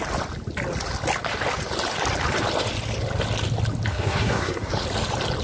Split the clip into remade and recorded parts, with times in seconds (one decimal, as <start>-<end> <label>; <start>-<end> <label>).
0.0-3.9 recorded; 3.9-4.7 remade; 4.7-5.4 recorded